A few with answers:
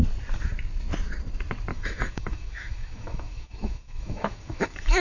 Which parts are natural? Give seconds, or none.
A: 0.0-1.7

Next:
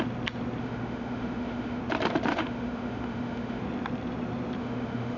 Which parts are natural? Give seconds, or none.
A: 0.0-0.6; 1.8-2.3; 3.6-4.6

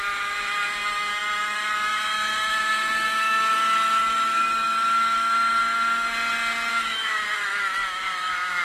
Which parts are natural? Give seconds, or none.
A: 5.6-6.7

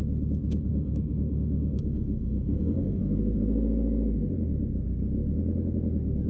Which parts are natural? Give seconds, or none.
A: 0.0-0.7; 3.0-6.3

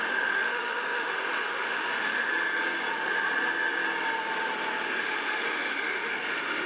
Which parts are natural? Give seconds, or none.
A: 2.3-5.0

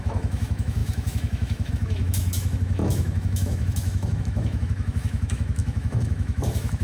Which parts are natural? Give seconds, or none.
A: none

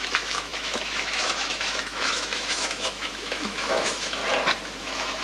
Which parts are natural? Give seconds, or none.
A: 4.2-4.8

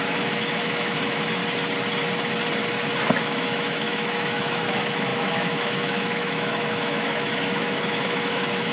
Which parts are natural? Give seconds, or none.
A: 1.4-3.2